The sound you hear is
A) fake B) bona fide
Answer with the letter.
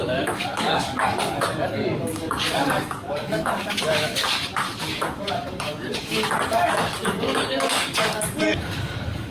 A